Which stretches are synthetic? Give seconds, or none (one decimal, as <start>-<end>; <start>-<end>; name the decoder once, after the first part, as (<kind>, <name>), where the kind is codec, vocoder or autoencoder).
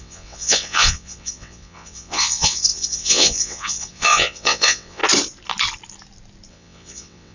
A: 0.0-5.0 (vocoder, WaveNeXt); 6.5-7.3